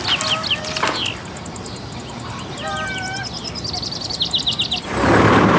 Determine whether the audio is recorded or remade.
recorded